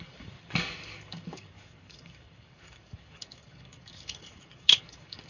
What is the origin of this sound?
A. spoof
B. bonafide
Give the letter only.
A